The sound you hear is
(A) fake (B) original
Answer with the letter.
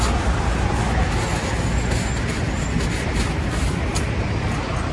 B